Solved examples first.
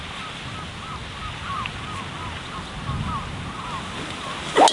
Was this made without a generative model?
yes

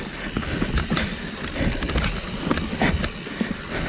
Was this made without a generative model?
yes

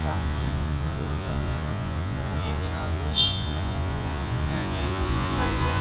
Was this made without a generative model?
no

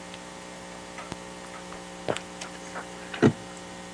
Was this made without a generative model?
yes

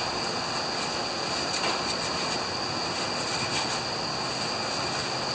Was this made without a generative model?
yes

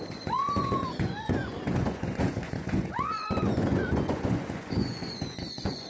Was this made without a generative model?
no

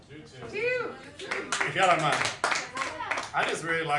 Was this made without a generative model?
yes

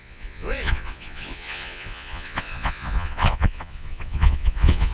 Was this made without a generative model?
no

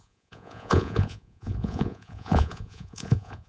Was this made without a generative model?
no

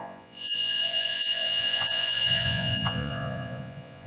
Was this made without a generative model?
no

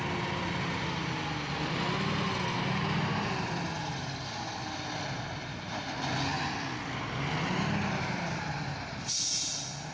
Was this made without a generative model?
yes